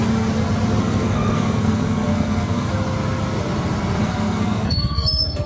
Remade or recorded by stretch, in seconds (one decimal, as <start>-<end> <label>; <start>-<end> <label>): 0.0-0.8 recorded; 0.8-2.7 remade; 2.7-4.0 recorded; 4.0-5.5 remade